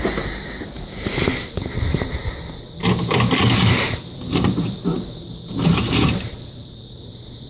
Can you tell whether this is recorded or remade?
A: remade